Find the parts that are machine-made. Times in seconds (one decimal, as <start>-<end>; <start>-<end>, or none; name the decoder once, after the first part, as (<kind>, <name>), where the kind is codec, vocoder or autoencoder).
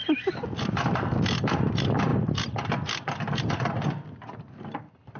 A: none